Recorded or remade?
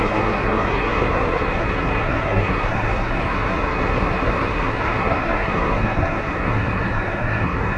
remade